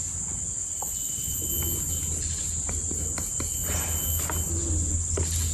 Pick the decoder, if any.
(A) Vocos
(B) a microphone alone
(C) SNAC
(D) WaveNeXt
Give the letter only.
B